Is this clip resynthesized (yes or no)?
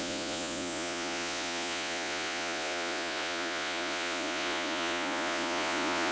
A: yes